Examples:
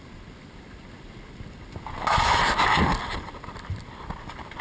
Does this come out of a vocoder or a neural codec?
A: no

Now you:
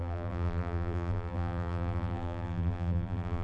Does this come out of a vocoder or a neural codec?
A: yes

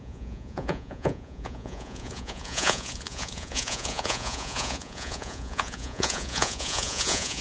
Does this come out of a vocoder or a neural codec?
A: yes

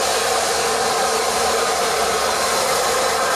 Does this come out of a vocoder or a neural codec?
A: no